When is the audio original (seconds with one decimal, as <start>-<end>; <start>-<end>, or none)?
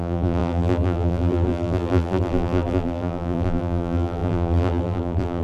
none